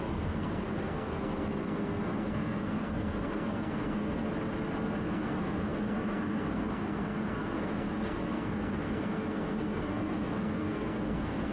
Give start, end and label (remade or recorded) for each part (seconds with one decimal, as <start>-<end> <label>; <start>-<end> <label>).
0.0-4.3 remade; 4.3-5.0 recorded; 5.0-11.5 remade